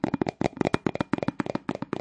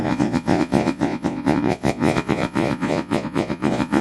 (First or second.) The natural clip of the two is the first